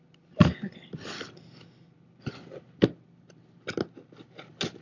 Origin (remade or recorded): recorded